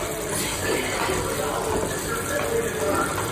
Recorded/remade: recorded